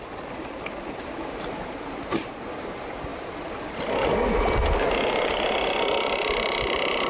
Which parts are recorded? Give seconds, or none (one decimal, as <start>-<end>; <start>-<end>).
0.0-7.1